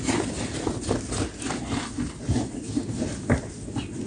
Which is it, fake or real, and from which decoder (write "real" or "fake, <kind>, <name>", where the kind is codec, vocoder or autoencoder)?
real